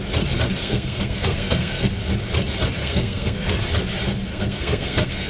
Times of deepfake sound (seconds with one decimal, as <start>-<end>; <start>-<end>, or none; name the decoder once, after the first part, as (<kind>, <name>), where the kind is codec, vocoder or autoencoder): 0.6-1.9 (codec, SNAC); 2.8-3.5; 4.3-5.3